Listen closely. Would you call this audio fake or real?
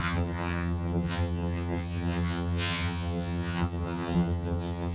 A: fake